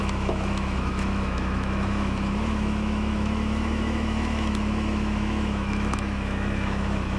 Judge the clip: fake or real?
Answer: fake